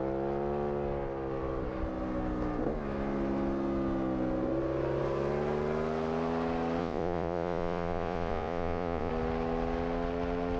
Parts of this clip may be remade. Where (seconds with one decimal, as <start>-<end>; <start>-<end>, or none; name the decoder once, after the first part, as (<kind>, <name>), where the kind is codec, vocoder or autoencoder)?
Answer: 6.8-9.1 (vocoder, Vocos)